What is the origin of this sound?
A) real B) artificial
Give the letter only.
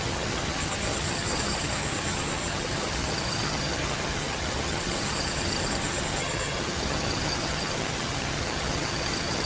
B